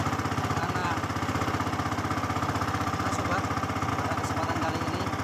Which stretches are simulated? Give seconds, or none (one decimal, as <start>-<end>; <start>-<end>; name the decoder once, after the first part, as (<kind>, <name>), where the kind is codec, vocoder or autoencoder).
none